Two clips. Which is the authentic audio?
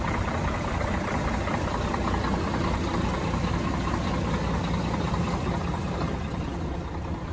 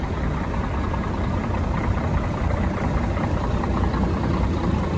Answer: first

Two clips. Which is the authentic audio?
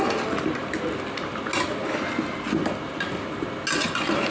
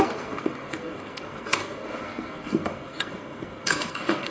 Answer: first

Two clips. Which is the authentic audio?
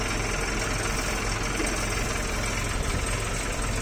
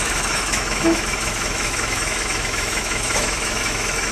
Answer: first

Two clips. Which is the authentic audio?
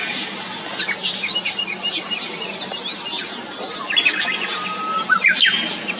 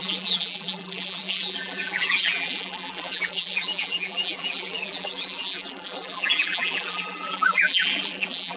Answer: first